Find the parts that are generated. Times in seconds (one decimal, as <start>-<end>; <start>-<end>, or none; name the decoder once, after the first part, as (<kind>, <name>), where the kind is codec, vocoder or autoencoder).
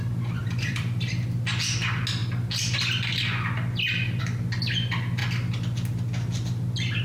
0.4-1.1 (vocoder, BigVGAN v2)